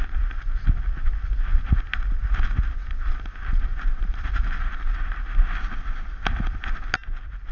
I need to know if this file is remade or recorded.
recorded